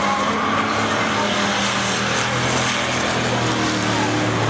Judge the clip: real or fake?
real